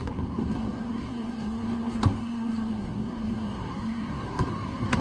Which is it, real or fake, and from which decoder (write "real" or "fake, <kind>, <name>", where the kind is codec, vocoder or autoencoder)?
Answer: fake, codec, SNAC